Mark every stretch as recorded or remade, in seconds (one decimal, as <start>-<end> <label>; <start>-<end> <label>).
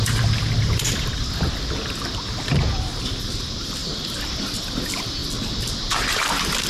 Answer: 0.0-1.1 remade; 1.1-2.6 recorded; 2.6-5.2 remade; 5.2-5.8 recorded; 5.8-6.7 remade